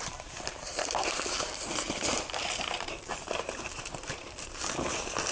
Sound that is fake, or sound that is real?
fake